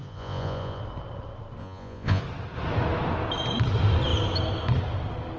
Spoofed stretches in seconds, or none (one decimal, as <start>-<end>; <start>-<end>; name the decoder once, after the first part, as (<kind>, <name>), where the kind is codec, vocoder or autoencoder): 0.0-0.8 (vocoder, Vocos); 1.6-2.2